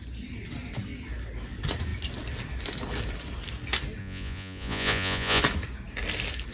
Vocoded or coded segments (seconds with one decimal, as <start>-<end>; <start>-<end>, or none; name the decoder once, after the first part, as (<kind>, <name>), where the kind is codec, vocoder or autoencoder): 4.0-5.4 (vocoder, Vocos)